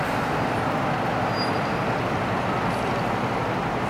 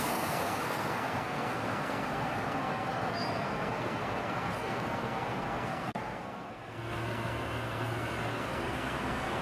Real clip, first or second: first